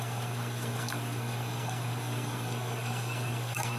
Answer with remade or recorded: remade